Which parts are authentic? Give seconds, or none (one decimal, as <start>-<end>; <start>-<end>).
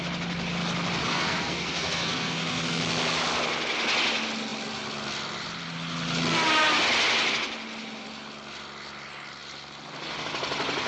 0.0-1.0; 2.8-10.9